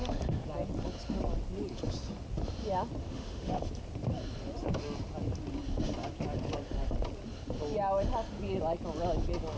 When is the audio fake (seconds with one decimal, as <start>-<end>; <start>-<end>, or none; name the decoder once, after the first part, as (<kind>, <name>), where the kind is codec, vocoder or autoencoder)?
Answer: 3.0-3.6 (autoencoder, DAC-VAE)

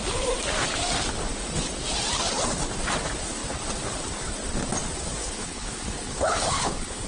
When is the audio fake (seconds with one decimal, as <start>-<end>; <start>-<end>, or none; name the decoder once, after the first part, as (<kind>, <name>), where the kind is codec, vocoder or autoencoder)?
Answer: 5.2-7.1 (codec, HILCodec)

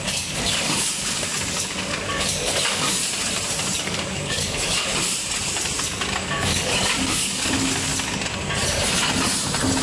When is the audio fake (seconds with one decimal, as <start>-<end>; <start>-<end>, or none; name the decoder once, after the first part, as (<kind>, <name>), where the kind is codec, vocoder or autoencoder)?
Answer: 0.0-3.0 (codec, DAC); 3.8-4.9; 6.2-7.9

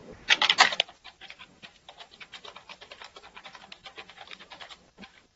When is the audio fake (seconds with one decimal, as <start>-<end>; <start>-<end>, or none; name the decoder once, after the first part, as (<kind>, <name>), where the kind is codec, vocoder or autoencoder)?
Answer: 0.0-5.4 (vocoder, BigVGAN v2)

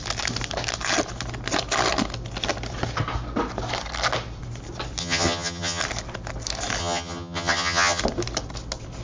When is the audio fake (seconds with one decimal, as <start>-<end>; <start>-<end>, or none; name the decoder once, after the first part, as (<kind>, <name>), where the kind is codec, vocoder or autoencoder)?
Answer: 5.0-5.8 (vocoder, HiFi-GAN); 6.8-8.0

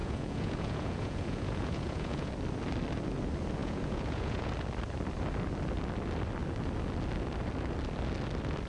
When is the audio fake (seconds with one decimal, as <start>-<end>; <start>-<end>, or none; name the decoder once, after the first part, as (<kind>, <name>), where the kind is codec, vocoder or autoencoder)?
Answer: 0.0-2.3 (vocoder, Vocos); 3.6-4.5

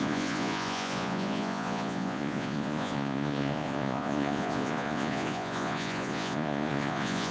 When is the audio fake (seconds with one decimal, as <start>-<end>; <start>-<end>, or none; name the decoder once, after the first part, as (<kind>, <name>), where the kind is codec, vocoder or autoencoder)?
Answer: 0.0-7.3 (vocoder, Vocos)